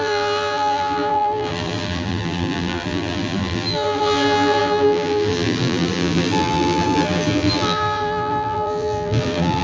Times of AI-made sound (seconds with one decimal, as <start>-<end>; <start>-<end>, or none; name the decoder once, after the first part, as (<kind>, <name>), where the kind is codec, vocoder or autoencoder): 0.0-9.6 (vocoder, BigVGAN v2)